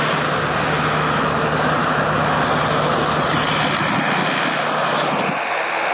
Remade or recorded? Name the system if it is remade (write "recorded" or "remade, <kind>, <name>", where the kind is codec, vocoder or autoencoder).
recorded